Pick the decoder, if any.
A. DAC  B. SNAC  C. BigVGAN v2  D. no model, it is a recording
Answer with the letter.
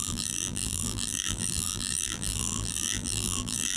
C